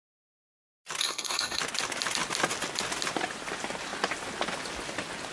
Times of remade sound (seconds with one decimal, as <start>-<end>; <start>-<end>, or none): 1.0-1.6